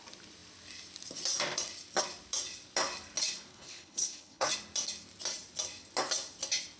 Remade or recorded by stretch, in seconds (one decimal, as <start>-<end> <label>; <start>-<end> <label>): 0.0-3.5 recorded; 3.5-4.5 remade; 4.5-6.8 recorded